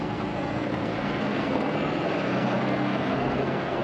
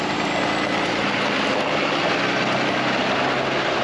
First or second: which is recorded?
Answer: second